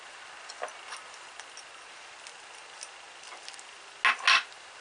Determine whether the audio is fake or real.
real